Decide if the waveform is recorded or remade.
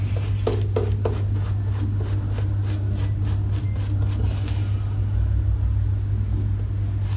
recorded